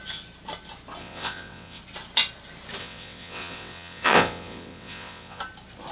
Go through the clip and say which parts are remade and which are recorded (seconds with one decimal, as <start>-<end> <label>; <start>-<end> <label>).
0.0-1.0 recorded; 1.0-1.8 remade; 1.8-2.8 recorded; 2.8-5.4 remade; 5.4-5.9 recorded